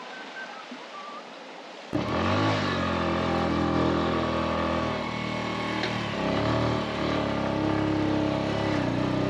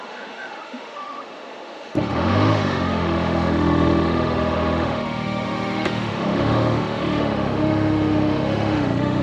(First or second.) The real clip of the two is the first